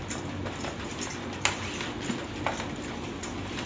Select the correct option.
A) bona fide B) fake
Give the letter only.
A